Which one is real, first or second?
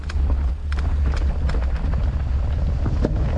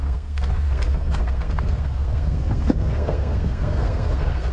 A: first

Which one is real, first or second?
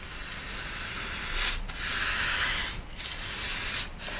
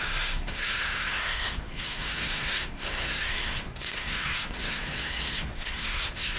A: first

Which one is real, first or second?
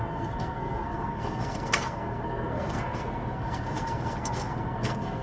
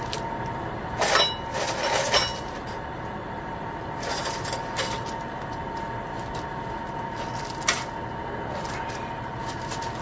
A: second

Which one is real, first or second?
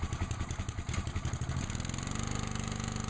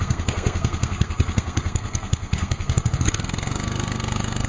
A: first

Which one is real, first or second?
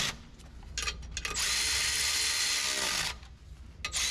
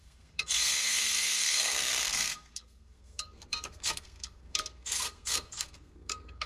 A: first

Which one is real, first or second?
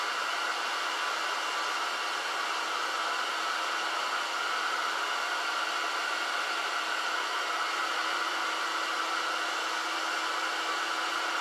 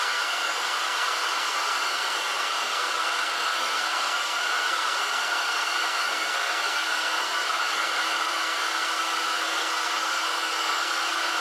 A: first